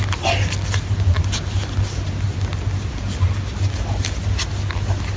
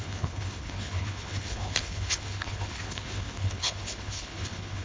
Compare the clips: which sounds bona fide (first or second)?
first